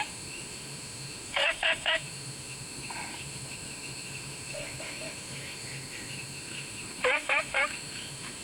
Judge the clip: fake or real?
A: fake